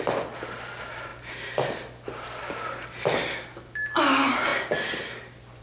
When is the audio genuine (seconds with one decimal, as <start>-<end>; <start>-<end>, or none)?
0.0-5.6